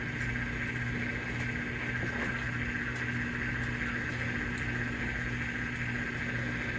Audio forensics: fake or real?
real